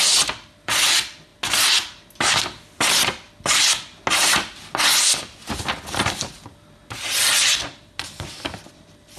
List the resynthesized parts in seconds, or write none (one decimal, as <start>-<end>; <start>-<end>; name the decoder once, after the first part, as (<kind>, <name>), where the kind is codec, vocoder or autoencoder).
0.0-1.3 (vocoder, BigVGAN v2); 5.4-6.8; 8.3-9.2